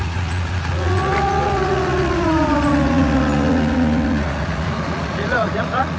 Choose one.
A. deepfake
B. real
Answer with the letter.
A